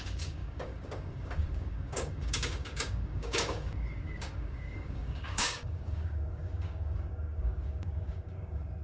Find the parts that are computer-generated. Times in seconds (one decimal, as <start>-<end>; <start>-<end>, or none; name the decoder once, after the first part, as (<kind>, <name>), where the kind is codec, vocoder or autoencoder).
0.0-8.8 (codec, DAC)